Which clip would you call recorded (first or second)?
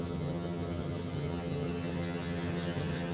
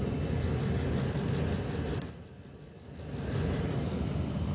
second